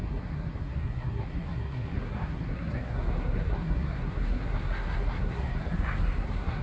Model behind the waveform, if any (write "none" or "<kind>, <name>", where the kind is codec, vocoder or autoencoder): codec, SNAC